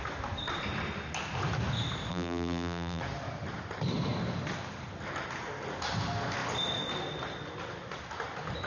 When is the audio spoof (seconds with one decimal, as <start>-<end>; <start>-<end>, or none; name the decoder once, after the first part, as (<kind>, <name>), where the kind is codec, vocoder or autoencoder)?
2.1-3.0 (vocoder, BigVGAN v2)